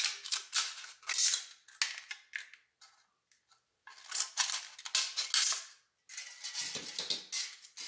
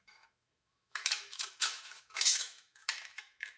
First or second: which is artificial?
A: second